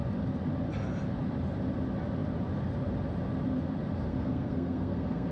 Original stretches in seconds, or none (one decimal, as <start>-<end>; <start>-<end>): 0.0-4.1